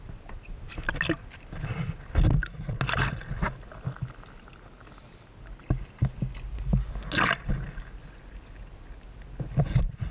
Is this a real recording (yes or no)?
yes